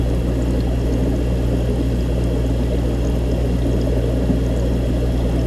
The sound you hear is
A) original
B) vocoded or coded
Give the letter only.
A